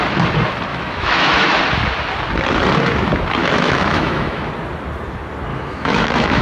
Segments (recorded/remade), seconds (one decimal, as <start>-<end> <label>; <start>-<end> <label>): 0.0-0.7 recorded; 0.7-1.6 remade; 1.6-3.4 recorded; 3.4-4.5 remade; 4.5-5.5 recorded; 5.5-6.4 remade